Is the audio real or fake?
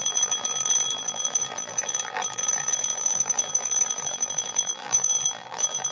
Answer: fake